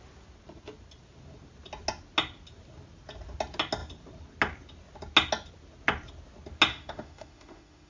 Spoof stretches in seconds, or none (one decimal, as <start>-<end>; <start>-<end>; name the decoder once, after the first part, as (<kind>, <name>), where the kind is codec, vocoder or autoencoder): 6.7-7.9 (autoencoder, DAC-VAE)